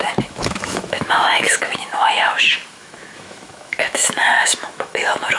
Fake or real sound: fake